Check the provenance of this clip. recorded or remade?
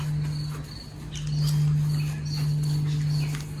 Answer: recorded